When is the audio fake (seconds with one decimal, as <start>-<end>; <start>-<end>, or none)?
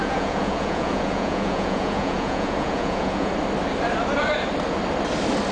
0.0-3.3